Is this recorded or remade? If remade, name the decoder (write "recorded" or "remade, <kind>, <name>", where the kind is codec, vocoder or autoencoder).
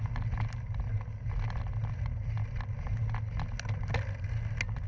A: recorded